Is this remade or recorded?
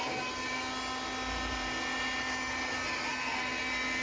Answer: recorded